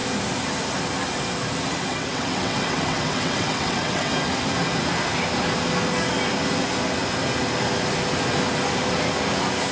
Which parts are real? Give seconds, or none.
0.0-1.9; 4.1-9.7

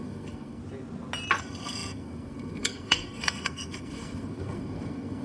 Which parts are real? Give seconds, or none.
0.6-1.4

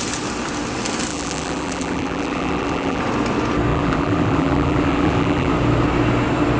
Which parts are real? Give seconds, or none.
0.0-1.1; 3.0-3.7; 5.5-6.6

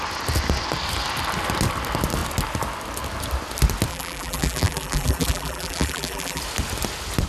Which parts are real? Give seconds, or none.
0.0-3.9; 6.4-7.3

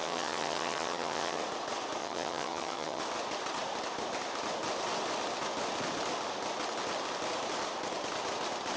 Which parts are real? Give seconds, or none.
1.4-2.0; 3.0-8.8

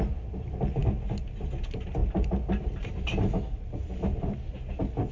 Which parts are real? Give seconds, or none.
0.0-5.1